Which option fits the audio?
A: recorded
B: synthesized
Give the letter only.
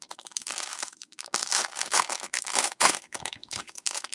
B